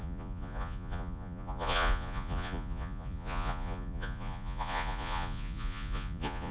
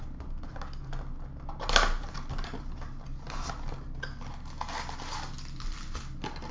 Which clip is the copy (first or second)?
first